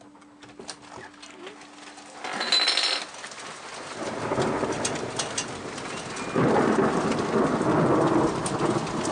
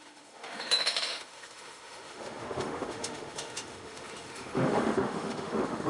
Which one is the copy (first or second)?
second